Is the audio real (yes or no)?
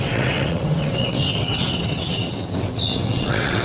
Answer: no